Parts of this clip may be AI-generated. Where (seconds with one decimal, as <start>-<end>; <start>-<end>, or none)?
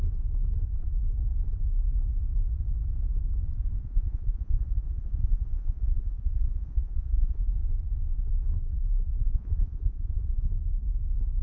3.8-7.5; 9.2-10.5